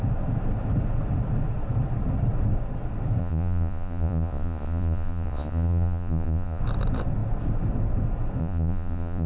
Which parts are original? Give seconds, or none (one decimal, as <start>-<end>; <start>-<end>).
0.0-3.2; 6.6-8.4